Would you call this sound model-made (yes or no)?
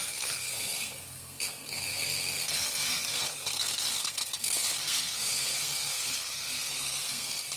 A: yes